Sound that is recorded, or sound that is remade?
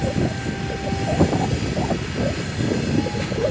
recorded